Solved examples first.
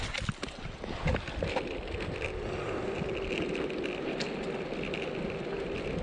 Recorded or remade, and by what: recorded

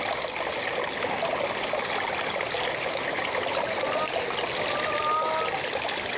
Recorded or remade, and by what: recorded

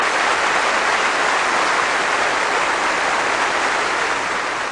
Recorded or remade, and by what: recorded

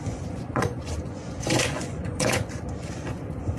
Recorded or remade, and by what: remade, vocoder, Vocos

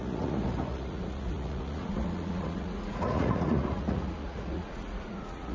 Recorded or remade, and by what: remade, vocoder, Vocos